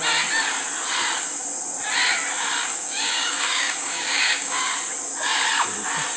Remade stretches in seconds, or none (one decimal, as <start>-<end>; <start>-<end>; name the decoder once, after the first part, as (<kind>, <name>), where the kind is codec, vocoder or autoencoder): 2.7-4.7 (codec, DAC)